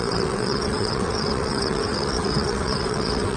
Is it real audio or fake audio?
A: fake